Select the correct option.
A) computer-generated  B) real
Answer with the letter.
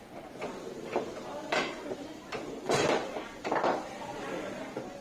A